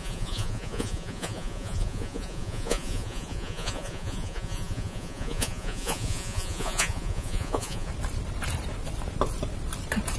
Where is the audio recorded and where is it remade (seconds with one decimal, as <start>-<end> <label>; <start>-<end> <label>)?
0.0-7.9 remade; 7.9-10.2 recorded